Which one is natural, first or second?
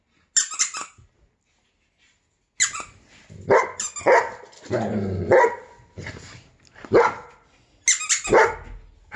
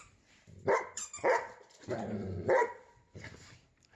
first